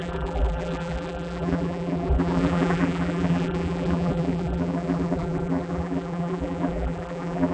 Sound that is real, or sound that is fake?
fake